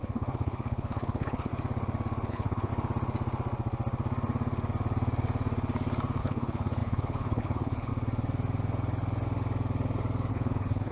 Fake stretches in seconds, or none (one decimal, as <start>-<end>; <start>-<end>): 0.0-1.5; 2.3-2.7; 6.2-7.9; 10.3-10.9